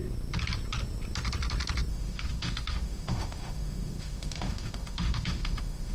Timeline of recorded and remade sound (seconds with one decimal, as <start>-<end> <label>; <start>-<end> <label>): 0.0-1.9 recorded; 1.9-5.9 remade